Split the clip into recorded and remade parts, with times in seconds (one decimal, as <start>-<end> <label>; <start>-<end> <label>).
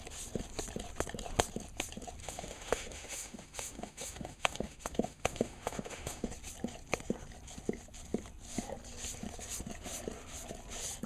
0.0-2.2 recorded; 2.2-6.3 remade; 6.3-11.1 recorded